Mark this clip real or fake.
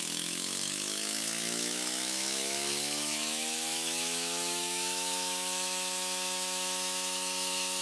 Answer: fake